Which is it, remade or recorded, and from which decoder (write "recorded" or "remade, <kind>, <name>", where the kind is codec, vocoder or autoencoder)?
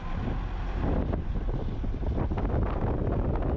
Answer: recorded